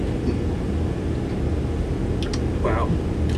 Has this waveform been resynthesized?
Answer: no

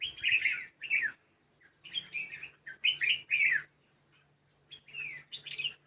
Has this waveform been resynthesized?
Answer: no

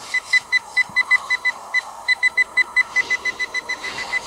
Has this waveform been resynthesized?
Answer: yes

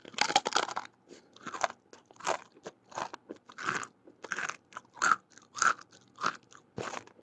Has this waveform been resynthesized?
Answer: no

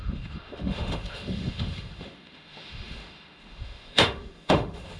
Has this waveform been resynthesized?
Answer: yes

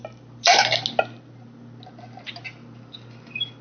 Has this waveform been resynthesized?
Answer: no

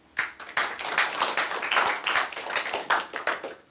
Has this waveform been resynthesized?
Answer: no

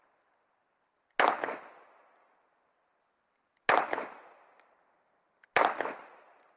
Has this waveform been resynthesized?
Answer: no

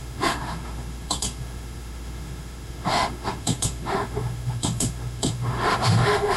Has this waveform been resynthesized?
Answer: yes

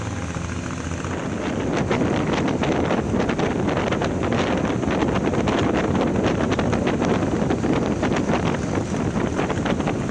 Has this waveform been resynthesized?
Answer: no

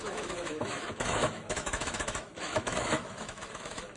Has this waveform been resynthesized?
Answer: yes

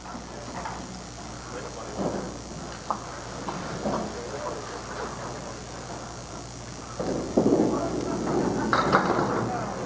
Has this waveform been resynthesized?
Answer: no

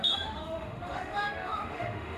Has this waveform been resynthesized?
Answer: yes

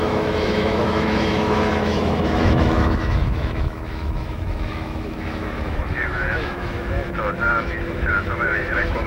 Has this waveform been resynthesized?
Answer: yes